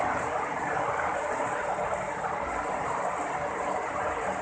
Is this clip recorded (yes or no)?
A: yes